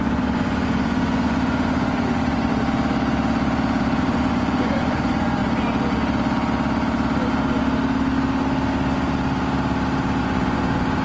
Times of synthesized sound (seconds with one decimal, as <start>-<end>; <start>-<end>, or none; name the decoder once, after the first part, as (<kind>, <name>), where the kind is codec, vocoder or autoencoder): 0.0-2.5 (vocoder, Vocos); 4.0-5.4; 10.2-11.0